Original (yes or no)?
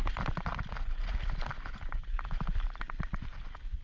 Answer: yes